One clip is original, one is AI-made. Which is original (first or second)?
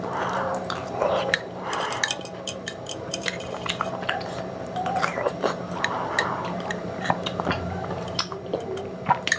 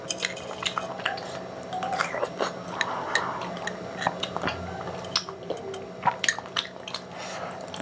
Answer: second